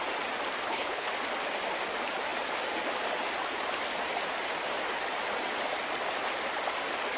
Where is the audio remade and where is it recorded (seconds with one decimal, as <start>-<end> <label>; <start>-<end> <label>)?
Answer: 0.0-0.6 recorded; 0.6-1.1 remade; 1.1-7.2 recorded